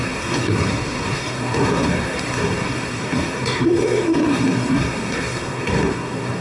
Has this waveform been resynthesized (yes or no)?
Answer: yes